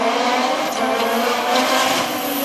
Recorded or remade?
recorded